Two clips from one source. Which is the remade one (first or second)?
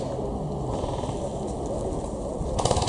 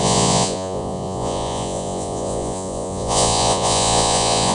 second